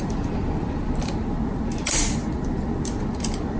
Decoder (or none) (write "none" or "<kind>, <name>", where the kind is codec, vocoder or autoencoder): none